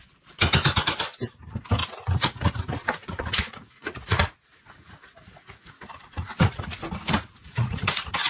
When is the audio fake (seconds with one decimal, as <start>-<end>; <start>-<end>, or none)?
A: 1.8-6.8; 7.4-8.3